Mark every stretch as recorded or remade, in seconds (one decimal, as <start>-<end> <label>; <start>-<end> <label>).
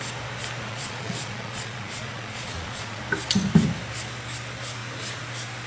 0.0-0.7 recorded; 0.7-3.0 remade; 3.0-5.7 recorded